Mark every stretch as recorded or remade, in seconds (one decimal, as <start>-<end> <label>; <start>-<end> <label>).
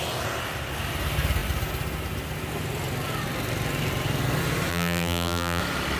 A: 0.0-4.7 recorded; 4.7-5.6 remade; 5.6-6.0 recorded